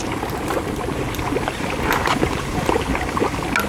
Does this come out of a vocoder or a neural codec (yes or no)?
no